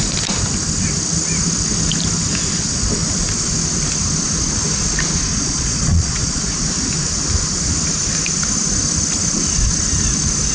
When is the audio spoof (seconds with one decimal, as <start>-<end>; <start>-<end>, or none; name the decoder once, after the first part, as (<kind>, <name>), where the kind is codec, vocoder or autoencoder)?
5.3-6.4 (vocoder, Vocos)